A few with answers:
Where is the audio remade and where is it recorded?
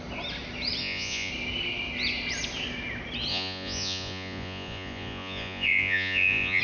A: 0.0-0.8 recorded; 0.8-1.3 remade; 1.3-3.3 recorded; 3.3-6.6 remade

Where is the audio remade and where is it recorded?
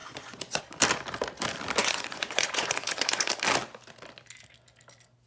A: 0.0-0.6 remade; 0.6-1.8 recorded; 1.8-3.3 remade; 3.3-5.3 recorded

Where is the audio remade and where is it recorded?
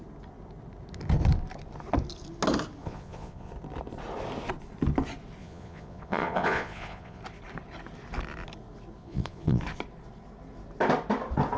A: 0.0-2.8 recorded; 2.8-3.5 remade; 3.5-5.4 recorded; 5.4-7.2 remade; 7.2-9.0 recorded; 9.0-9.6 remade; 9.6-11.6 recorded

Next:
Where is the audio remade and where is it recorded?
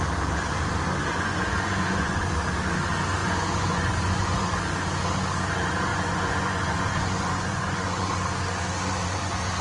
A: 0.0-1.0 recorded; 1.0-2.3 remade; 2.3-3.2 recorded; 3.2-4.6 remade; 4.6-5.9 recorded; 5.9-8.1 remade; 8.1-9.6 recorded